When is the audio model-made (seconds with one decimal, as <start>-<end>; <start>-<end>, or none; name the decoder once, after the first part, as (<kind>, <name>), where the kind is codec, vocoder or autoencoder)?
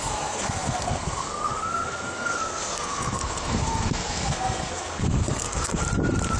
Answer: 0.0-5.8 (codec, SNAC)